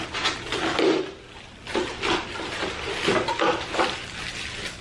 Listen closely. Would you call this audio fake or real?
real